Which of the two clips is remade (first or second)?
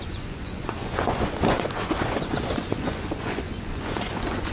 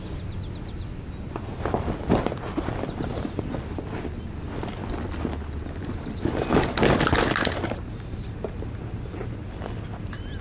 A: first